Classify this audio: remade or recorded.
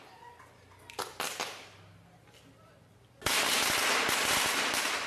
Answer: recorded